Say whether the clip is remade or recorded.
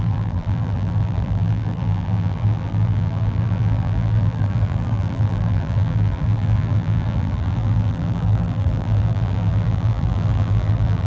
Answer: remade